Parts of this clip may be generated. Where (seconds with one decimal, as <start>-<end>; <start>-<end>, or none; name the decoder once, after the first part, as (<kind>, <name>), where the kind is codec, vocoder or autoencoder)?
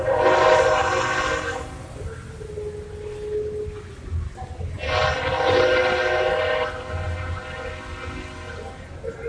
0.0-0.8 (vocoder, BigVGAN v2); 5.3-5.8; 6.4-7.4; 8.9-9.3